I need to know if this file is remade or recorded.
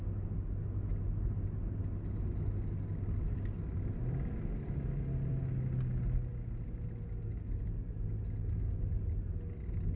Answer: recorded